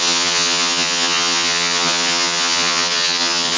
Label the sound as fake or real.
fake